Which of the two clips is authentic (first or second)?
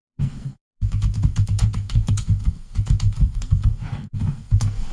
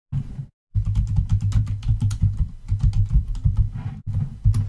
second